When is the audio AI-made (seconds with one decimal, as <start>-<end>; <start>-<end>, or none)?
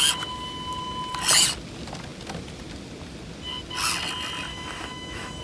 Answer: 4.5-5.4